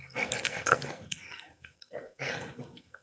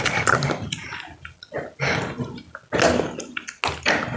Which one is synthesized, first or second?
first